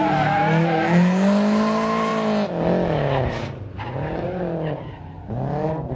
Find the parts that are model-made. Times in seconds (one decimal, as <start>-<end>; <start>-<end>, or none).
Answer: none